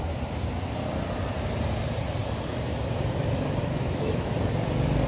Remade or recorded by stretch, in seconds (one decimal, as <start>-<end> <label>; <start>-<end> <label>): 0.0-3.6 recorded; 3.6-4.3 remade; 4.3-5.1 recorded